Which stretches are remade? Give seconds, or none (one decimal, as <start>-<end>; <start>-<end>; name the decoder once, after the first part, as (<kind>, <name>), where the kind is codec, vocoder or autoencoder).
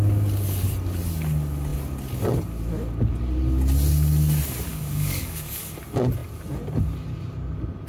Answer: 4.7-5.6 (codec, DAC)